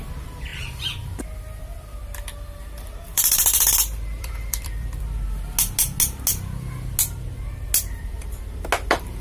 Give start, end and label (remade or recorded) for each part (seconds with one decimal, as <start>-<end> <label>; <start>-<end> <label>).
0.0-0.5 recorded; 0.5-1.2 remade; 1.2-3.1 recorded; 3.1-5.0 remade; 5.0-9.2 recorded